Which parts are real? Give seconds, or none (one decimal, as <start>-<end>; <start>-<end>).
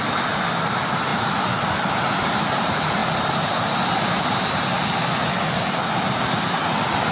0.0-7.1